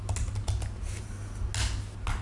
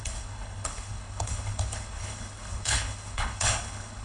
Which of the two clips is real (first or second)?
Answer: first